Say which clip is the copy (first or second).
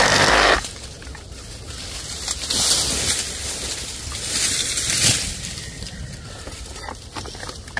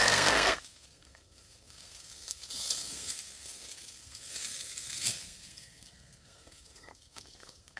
second